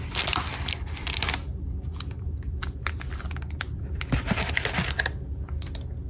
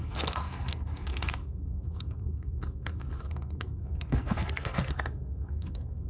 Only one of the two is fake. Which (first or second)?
second